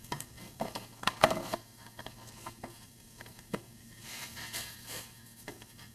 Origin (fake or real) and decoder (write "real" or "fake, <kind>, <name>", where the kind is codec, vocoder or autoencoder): fake, codec, SNAC